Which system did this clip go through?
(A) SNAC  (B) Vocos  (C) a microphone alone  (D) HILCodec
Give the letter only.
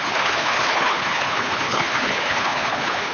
D